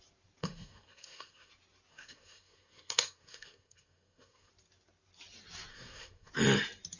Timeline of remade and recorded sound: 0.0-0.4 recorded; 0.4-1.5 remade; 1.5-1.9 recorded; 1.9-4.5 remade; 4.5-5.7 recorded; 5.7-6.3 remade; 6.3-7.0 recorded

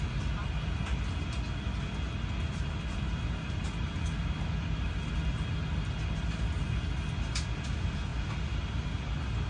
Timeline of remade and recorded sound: 0.0-9.5 recorded

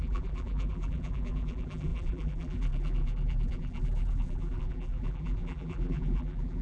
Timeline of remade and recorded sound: 0.0-6.6 remade

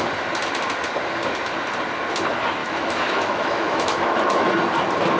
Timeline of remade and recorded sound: 0.0-2.6 recorded; 2.6-4.5 remade; 4.5-5.2 recorded

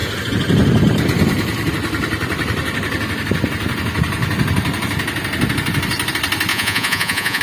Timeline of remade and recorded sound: 0.0-6.5 recorded; 6.5-7.4 remade

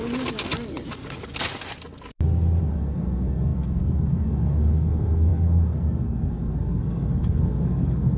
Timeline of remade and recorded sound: 0.0-2.6 recorded; 2.6-8.2 remade

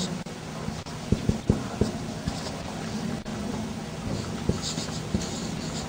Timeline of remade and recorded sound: 0.0-5.9 recorded